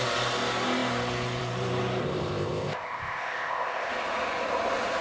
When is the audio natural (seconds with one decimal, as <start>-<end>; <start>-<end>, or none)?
0.0-2.0; 3.9-5.0